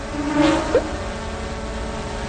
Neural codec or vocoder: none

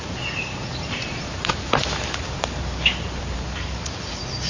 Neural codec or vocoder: vocoder, BigVGAN v2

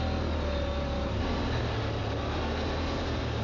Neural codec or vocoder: none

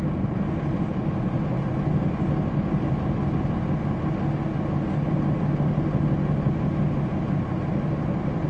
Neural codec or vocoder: none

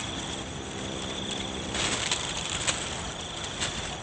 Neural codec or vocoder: none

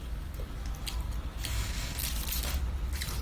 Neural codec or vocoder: none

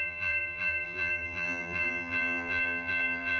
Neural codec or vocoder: vocoder, BigVGAN v2